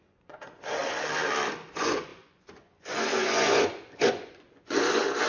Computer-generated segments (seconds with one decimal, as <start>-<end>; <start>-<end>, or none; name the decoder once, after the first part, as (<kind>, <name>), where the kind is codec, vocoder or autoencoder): 0.0-0.8 (vocoder, Vocos); 1.7-5.3